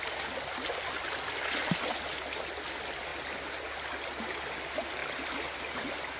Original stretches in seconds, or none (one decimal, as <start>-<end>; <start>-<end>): 0.0-6.2